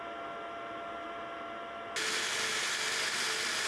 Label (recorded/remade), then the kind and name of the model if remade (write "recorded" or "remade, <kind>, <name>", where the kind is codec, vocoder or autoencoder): recorded